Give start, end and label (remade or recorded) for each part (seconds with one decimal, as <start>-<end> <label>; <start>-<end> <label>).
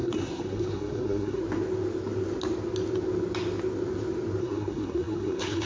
0.0-1.4 remade; 1.4-4.4 recorded; 4.4-5.7 remade